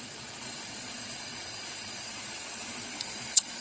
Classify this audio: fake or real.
fake